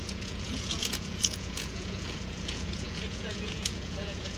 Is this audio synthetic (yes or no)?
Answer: yes